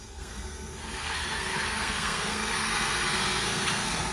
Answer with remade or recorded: remade